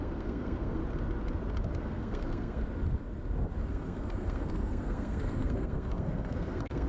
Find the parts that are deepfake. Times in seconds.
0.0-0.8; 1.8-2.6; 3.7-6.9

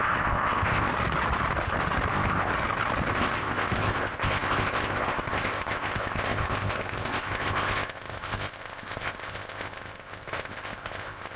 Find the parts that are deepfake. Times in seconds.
0.0-0.9; 2.1-2.5; 3.1-11.4